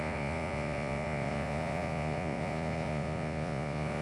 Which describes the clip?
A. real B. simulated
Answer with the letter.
B